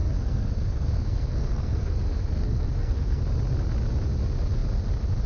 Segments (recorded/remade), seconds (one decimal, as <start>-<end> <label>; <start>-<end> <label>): 0.0-3.2 remade; 3.2-5.3 recorded